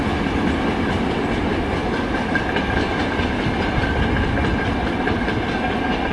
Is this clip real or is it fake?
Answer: real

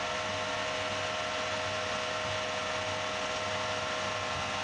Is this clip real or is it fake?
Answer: real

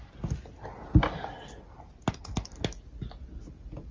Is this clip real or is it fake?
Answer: real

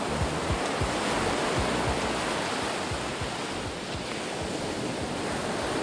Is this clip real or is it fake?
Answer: real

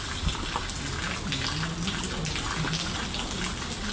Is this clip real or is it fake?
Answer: real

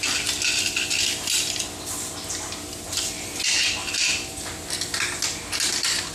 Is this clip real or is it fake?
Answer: real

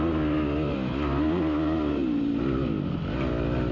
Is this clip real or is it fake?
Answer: real